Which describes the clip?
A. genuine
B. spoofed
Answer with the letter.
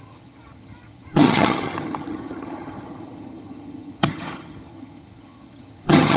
B